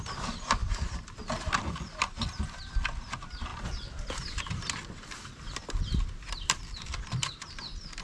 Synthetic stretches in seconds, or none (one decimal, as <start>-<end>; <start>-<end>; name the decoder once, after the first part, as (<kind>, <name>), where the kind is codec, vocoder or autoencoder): 0.6-2.4 (vocoder, BigVGAN v2); 3.5-7.5